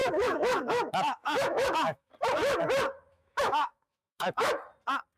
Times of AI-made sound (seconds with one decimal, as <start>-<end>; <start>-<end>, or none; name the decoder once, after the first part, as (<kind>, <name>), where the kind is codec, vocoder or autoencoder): 0.0-2.1 (autoencoder, DAC-VAE); 3.1-4.6